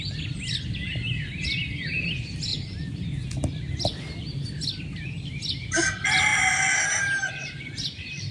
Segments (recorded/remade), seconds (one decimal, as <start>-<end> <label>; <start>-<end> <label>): 0.0-8.3 recorded